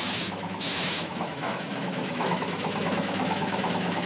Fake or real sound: fake